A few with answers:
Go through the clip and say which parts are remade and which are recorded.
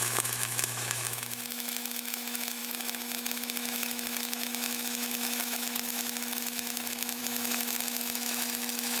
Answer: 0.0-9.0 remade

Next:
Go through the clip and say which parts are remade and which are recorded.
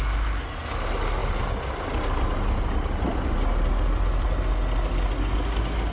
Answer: 0.0-5.9 recorded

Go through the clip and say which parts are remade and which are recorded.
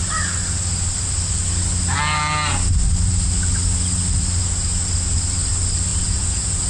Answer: 0.0-5.9 recorded; 5.9-6.7 remade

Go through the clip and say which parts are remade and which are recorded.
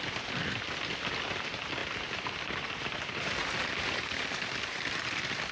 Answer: 0.0-5.5 recorded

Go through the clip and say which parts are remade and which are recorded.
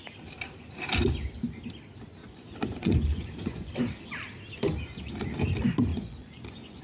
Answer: 0.0-2.2 recorded; 2.2-3.7 remade; 3.7-5.9 recorded; 5.9-6.8 remade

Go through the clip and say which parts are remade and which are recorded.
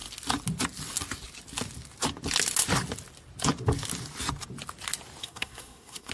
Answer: 0.0-5.2 recorded; 5.2-6.1 remade